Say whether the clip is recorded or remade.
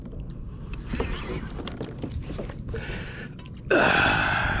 recorded